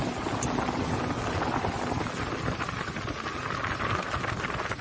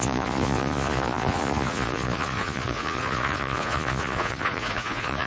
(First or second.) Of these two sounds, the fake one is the second